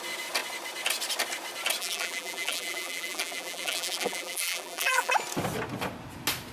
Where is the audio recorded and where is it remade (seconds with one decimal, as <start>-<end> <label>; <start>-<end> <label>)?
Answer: 0.0-1.8 recorded; 1.8-5.1 remade; 5.1-6.5 recorded